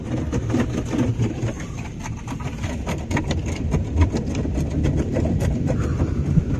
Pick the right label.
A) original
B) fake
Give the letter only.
A